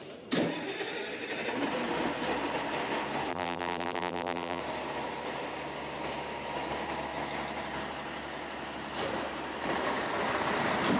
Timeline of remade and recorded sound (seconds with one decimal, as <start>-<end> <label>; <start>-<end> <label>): 0.0-3.3 recorded; 3.3-4.6 remade; 4.6-11.0 recorded